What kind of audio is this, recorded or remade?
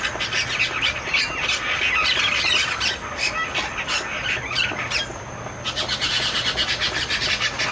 recorded